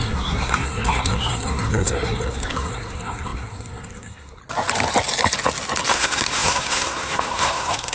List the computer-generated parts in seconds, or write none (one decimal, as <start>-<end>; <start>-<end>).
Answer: 0.0-4.4; 5.9-7.9